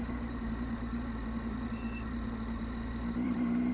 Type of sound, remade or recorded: remade